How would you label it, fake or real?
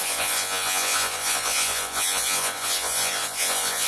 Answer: fake